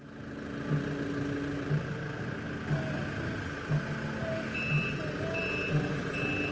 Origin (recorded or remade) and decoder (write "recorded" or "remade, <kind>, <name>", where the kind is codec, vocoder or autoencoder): recorded